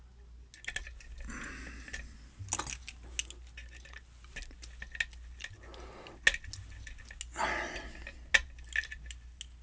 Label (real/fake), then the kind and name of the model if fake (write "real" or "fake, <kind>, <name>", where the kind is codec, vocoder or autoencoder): real